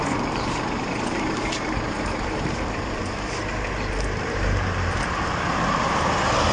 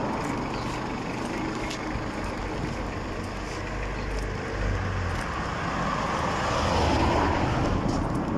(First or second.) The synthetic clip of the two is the first